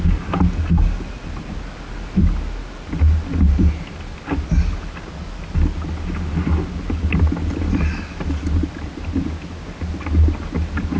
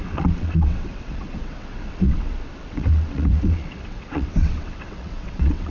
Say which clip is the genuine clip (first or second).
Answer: first